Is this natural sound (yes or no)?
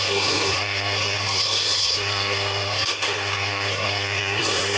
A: no